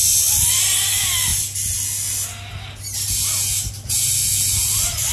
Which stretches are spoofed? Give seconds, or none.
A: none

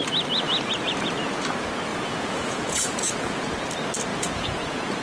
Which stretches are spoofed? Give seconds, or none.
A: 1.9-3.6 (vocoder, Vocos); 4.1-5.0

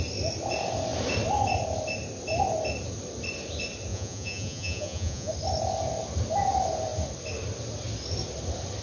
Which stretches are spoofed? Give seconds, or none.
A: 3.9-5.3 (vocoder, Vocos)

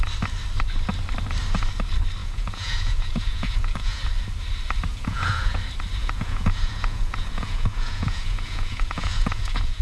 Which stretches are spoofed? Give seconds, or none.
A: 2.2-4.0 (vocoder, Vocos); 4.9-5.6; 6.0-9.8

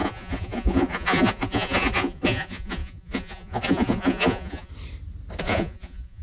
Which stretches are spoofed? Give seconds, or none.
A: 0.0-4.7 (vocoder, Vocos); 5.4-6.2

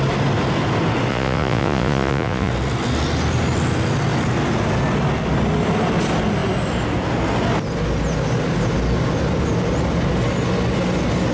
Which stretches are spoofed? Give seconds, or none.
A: 1.1-2.5 (vocoder, Vocos)

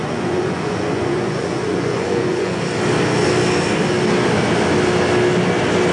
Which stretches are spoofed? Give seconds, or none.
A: 0.0-2.6 (vocoder, Vocos)